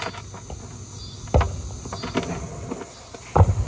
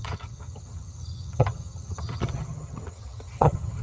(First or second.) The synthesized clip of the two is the second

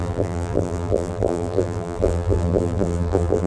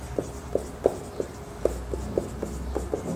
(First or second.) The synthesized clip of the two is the first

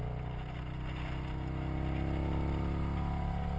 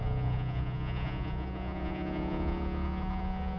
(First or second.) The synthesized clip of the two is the second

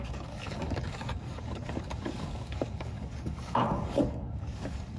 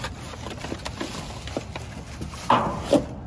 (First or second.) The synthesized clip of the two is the first